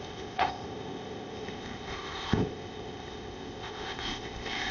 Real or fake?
fake